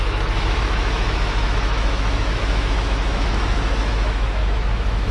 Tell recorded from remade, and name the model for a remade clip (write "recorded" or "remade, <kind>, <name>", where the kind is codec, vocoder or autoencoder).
remade, autoencoder, DAC-VAE